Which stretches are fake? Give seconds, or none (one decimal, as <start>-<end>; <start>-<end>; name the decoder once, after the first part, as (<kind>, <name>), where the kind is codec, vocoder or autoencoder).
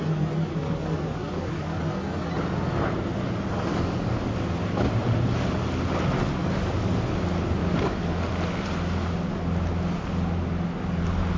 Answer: 0.6-1.8 (codec, DAC); 3.7-4.3; 6.4-7.0; 7.6-8.3